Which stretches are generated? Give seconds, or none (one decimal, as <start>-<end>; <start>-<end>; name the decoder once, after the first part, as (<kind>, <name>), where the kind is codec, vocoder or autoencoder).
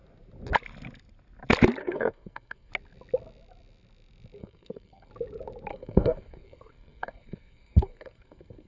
1.8-2.7 (codec, SNAC); 4.4-5.1; 5.7-8.7